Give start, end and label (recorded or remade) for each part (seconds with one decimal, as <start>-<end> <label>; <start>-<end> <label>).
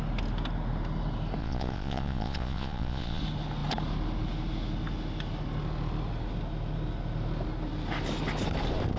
0.0-1.4 recorded; 1.4-3.2 remade; 3.2-9.0 recorded